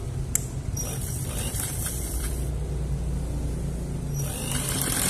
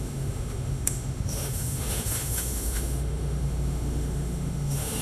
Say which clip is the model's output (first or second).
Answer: second